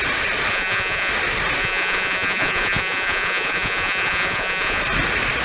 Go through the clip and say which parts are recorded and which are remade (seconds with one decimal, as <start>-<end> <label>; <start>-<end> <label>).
0.0-0.5 recorded; 0.5-1.1 remade; 1.1-1.6 recorded; 1.6-4.8 remade; 4.8-5.4 recorded